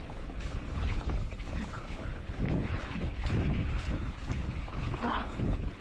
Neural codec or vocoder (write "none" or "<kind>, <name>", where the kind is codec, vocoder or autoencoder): codec, HILCodec